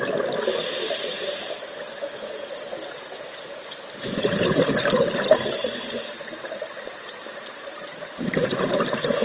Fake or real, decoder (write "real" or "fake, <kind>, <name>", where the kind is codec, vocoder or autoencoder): fake, vocoder, BigVGAN v2